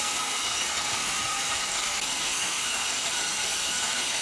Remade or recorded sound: remade